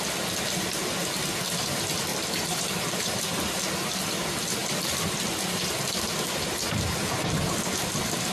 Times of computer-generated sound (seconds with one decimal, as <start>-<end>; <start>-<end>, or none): 2.1-3.2